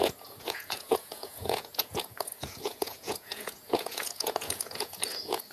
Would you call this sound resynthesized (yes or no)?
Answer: yes